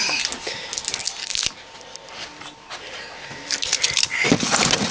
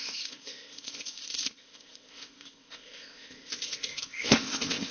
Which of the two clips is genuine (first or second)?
first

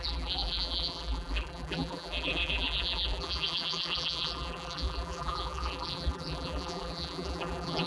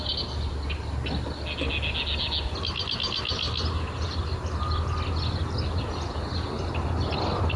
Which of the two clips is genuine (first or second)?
second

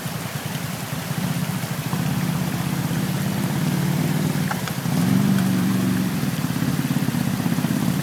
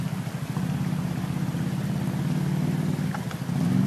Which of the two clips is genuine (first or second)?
second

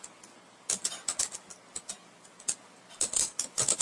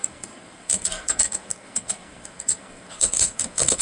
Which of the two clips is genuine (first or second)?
first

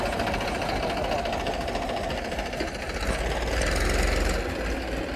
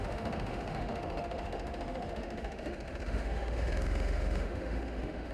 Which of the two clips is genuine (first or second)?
first